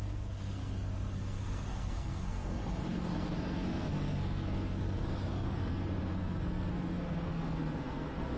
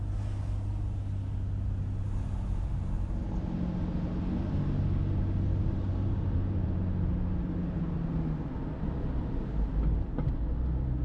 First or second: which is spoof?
first